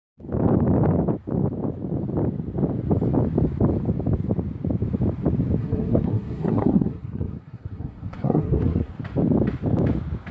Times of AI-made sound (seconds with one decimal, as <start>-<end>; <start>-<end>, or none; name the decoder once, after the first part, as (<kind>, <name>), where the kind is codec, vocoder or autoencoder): 5.6-8.9 (codec, SNAC)